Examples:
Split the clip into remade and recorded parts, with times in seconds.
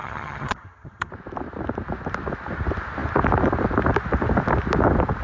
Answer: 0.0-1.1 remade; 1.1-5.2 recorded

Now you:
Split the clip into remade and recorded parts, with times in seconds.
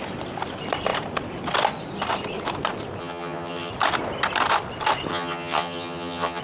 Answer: 0.0-3.0 recorded; 3.0-3.7 remade; 3.7-5.1 recorded; 5.1-6.4 remade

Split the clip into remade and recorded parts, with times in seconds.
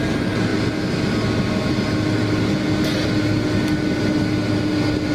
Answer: 0.0-5.1 recorded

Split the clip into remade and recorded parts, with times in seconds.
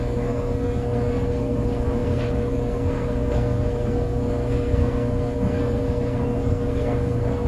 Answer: 0.0-7.5 remade